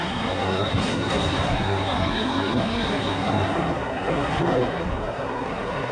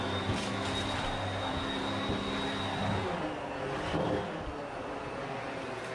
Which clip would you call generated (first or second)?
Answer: first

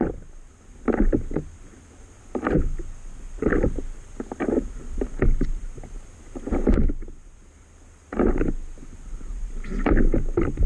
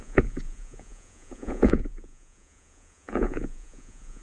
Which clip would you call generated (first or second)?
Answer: second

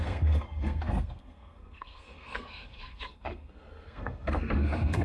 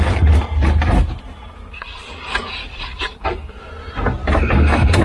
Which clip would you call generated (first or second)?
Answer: first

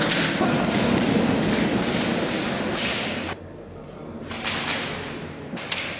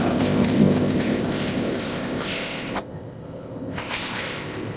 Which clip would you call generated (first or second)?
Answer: second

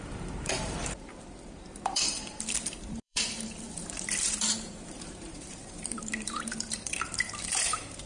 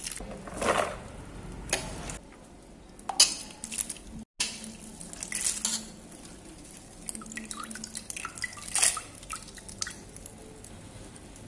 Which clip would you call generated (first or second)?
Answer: first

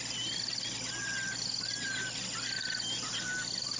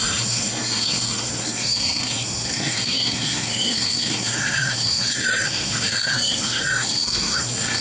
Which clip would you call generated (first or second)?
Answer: second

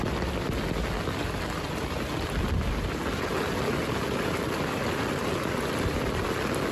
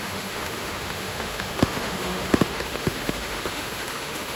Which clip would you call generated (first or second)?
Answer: second